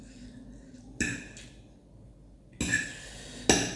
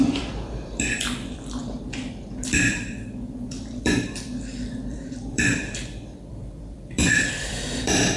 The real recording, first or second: first